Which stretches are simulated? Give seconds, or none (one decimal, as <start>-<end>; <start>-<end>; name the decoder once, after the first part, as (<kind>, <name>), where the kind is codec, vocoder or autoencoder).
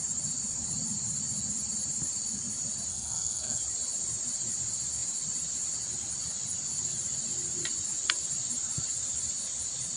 2.9-3.6 (codec, SNAC)